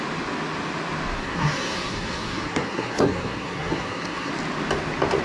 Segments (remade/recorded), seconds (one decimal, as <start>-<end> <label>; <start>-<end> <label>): 0.0-1.2 recorded; 1.2-4.3 remade; 4.3-5.2 recorded